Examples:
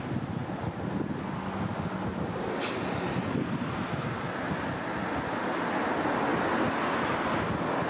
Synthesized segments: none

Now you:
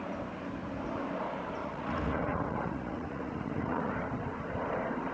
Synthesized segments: 1.6-3.9 (vocoder, Vocos)

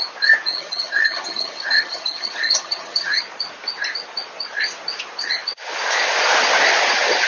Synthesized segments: 0.5-3.2 (vocoder, HiFi-GAN)